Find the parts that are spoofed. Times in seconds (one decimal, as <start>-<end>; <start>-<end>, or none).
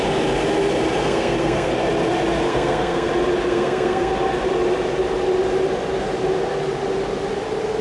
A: 1.0-1.7; 2.5-3.1; 3.5-4.1